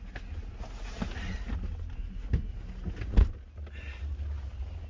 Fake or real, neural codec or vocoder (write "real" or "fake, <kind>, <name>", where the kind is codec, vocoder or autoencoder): real